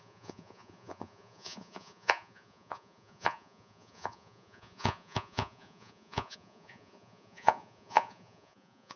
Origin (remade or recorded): remade